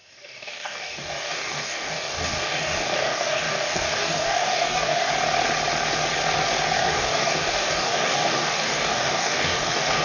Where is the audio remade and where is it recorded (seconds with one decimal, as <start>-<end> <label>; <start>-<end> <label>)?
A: 0.0-5.1 remade; 5.1-6.8 recorded; 6.8-10.0 remade